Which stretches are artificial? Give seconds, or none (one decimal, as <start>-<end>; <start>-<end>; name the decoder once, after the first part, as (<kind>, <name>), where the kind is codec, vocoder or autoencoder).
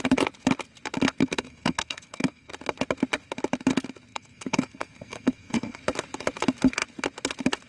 1.2-2.5 (codec, SNAC); 4.1-5.8